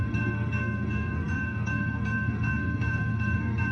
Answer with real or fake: fake